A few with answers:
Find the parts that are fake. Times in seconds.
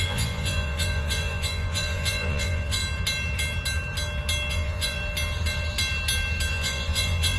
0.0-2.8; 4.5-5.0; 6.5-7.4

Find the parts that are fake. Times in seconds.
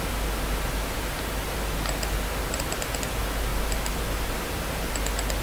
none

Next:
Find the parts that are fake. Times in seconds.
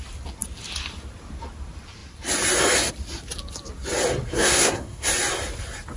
4.3-5.1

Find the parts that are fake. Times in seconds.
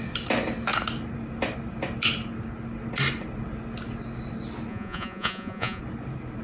4.7-5.8